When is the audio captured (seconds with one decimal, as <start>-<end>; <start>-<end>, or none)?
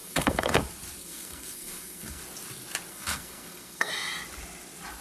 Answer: 0.6-1.0; 2.2-2.9; 3.9-5.0